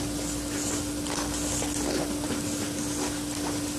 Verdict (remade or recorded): recorded